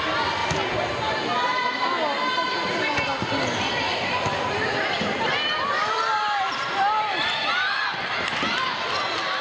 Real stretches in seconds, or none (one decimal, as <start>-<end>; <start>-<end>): 0.4-3.8